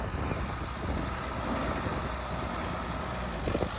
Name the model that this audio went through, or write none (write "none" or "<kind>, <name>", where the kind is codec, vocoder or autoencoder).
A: none